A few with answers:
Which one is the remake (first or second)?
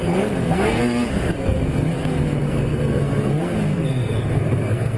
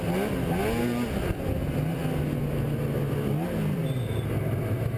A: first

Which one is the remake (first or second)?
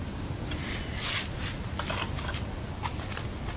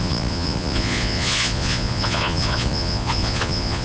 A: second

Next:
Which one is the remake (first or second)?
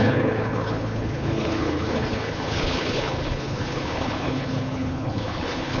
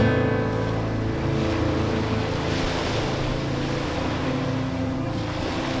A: first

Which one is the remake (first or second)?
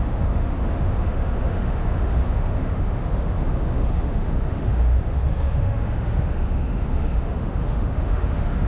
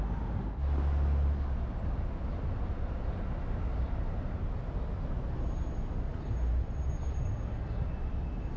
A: first